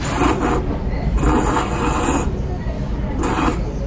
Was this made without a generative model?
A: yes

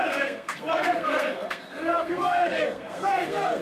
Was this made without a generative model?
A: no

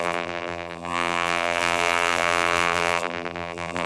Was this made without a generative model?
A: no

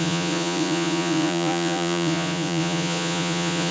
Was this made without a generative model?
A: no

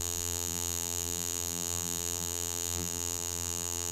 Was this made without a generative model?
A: no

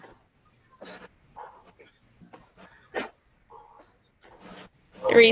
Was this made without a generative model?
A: yes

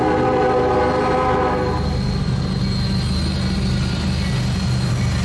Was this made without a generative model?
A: yes